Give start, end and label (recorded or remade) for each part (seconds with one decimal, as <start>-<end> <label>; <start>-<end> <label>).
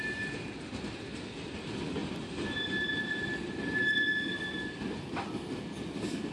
0.0-6.3 recorded